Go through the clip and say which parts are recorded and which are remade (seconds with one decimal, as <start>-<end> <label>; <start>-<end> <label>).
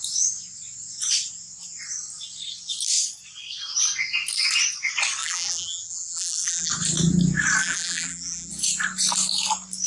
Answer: 0.0-5.2 recorded; 5.2-6.7 remade; 6.7-7.6 recorded; 7.6-8.5 remade; 8.5-9.9 recorded